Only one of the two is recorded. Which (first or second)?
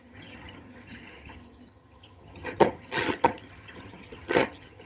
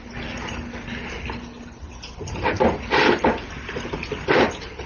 second